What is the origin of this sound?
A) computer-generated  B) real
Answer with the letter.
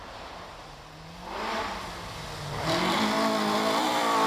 B